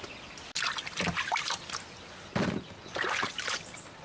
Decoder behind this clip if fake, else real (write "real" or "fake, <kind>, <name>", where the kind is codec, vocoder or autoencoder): real